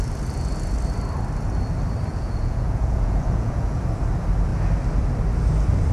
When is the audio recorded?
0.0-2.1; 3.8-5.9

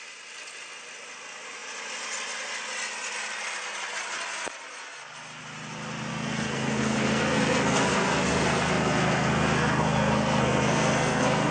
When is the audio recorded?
0.0-6.1

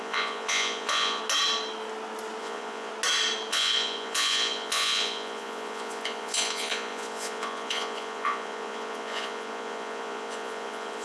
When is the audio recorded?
1.2-2.4; 2.9-3.5